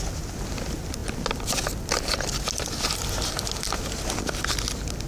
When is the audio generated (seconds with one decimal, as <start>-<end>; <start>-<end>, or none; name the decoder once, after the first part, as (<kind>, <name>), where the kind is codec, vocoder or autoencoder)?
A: none